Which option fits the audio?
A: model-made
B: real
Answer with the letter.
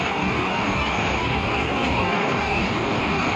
A